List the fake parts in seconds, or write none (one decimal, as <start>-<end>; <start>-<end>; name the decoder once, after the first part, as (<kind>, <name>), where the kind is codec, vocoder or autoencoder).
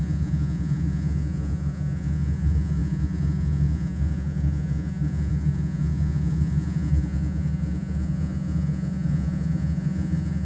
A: 0.0-10.4 (vocoder, Vocos)